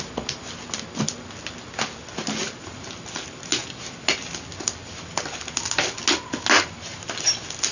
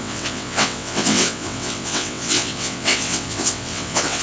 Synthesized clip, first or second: second